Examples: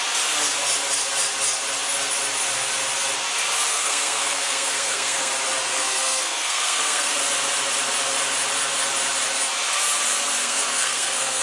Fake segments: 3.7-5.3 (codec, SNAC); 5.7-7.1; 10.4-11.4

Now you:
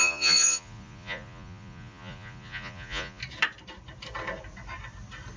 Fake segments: 0.0-3.2 (vocoder, Vocos)

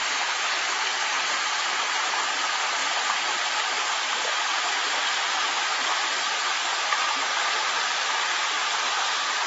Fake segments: 2.2-6.6 (vocoder, BigVGAN v2); 7.3-9.5

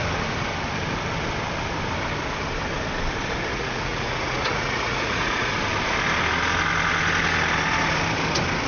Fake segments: 3.5-5.5 (vocoder, Vocos)

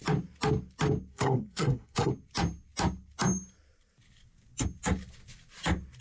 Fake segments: 1.1-2.1 (codec, SNAC)

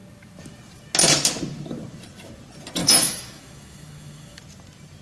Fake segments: 2.8-4.4 (autoencoder, DAC-VAE)

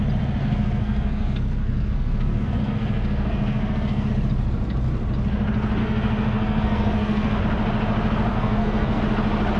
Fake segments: 0.4-4.1 (codec, SNAC); 5.8-7.4; 8.3-9.0